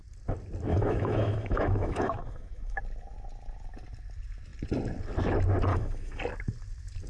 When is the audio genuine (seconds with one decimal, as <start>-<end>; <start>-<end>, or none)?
0.0-0.7; 2.8-5.7; 6.2-7.1